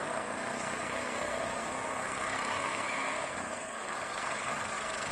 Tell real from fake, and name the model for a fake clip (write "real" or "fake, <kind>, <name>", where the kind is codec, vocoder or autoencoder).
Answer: fake, codec, SNAC